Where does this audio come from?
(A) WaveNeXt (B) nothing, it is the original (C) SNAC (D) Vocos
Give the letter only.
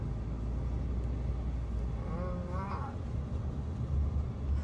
B